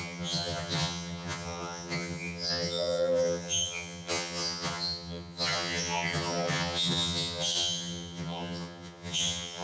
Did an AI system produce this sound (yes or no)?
yes